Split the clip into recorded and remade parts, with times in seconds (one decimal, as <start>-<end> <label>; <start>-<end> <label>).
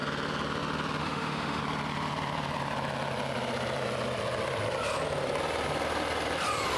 0.0-1.0 recorded; 1.0-1.6 remade; 1.6-6.8 recorded